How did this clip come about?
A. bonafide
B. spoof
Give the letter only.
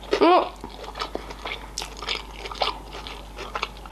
A